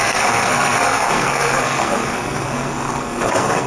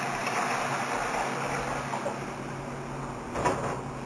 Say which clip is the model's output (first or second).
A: first